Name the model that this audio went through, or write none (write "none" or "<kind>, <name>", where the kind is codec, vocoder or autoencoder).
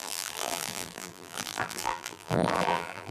vocoder, BigVGAN v2